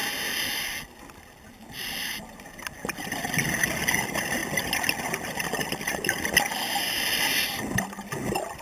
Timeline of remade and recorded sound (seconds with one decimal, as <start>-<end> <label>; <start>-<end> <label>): 0.0-4.0 recorded; 4.0-4.4 remade; 4.4-6.8 recorded; 6.8-8.6 remade